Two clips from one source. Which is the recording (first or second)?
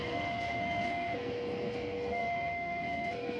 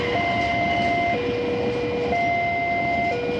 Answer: second